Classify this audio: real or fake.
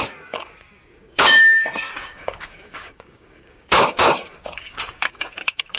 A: fake